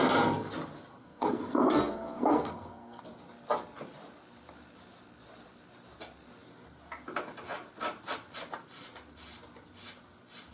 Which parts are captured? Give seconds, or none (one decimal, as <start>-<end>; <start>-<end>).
0.0-1.0; 3.0-10.5